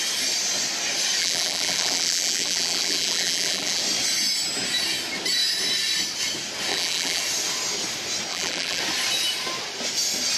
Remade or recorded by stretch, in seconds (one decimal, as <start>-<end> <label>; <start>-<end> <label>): 0.0-1.2 recorded; 1.2-3.8 remade; 3.8-6.7 recorded; 6.7-7.2 remade; 7.2-8.3 recorded; 8.3-8.8 remade; 8.8-10.4 recorded